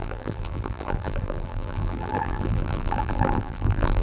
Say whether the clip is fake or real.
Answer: fake